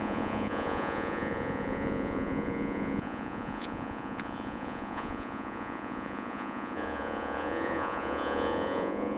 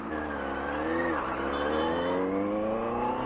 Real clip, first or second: second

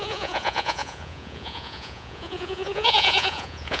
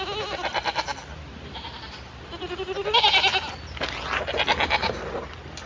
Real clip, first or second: second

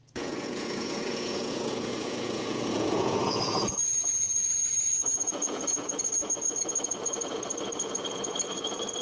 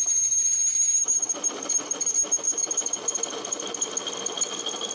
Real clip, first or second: second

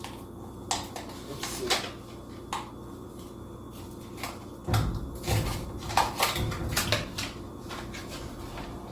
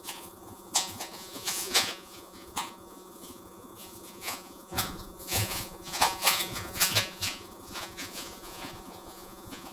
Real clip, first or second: first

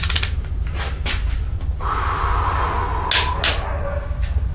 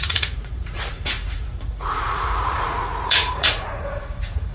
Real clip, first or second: first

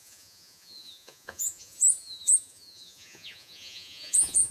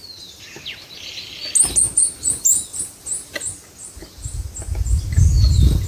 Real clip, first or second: second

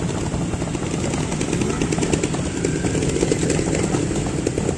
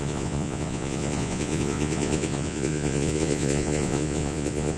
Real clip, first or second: first